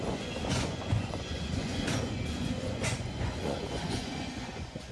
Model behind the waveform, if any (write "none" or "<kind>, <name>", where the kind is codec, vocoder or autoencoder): vocoder, Vocos